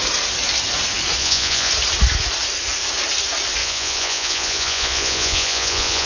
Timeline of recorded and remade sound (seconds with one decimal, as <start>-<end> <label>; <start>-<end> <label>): 0.0-1.2 recorded; 1.2-1.7 remade; 1.7-3.6 recorded; 3.6-6.1 remade